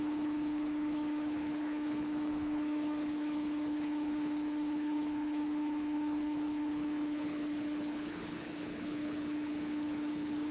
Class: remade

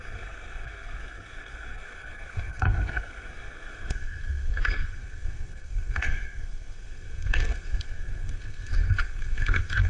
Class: remade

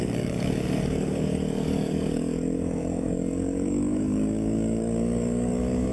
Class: remade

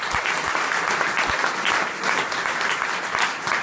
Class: recorded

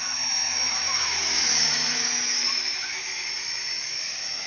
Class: remade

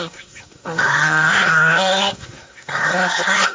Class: remade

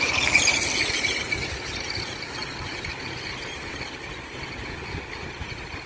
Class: recorded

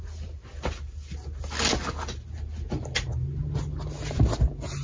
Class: recorded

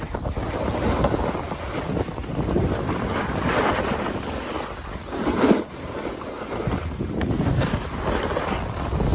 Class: recorded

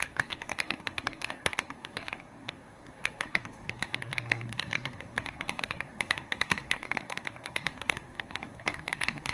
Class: remade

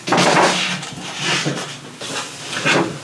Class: recorded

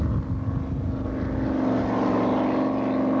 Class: recorded